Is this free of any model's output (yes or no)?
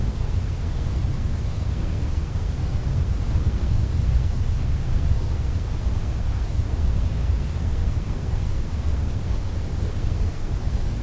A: no